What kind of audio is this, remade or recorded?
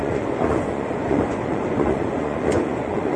remade